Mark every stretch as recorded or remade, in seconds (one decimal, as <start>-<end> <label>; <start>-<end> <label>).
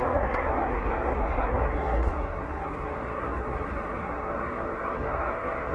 0.0-5.7 remade